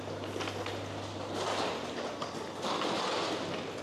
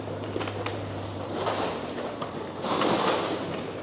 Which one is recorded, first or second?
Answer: first